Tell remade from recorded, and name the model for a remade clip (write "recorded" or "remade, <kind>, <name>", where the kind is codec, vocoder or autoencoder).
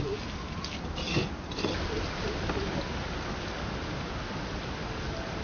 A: recorded